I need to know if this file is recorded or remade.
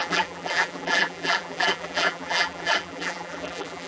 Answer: remade